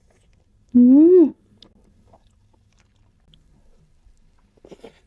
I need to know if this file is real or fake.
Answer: real